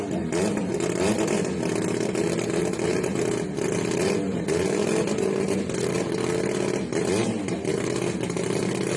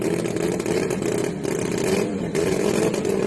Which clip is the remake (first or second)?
second